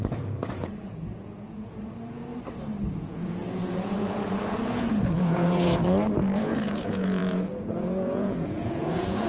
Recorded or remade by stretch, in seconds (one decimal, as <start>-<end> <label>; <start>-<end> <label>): 0.0-2.3 remade; 2.3-2.9 recorded; 2.9-5.8 remade; 5.8-6.4 recorded; 6.4-9.3 remade